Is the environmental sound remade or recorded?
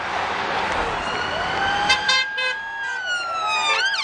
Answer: recorded